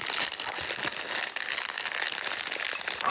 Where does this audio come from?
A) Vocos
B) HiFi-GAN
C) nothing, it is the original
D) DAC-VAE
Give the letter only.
C